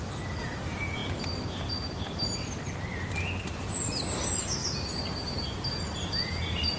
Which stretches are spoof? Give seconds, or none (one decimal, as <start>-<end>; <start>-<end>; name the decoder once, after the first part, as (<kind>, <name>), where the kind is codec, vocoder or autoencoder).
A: none